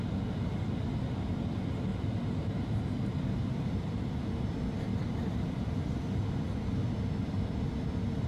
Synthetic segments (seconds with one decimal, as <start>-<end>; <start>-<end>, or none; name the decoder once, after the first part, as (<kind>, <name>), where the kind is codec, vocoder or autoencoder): 1.9-4.3 (vocoder, BigVGAN v2); 4.9-6.0